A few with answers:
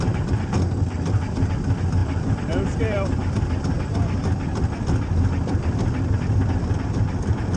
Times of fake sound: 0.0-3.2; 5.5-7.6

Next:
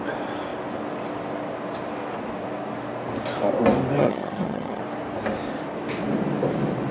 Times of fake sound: 4.0-4.8

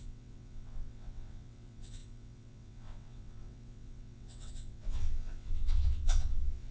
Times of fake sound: 0.0-6.7